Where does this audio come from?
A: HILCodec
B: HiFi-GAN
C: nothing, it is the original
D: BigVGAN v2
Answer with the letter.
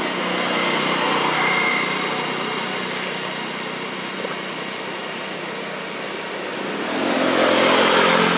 C